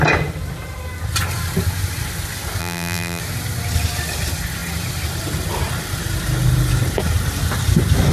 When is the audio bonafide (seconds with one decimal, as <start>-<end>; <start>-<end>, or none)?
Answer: 0.0-2.6; 3.2-8.1